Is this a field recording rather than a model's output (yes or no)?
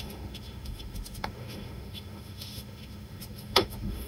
no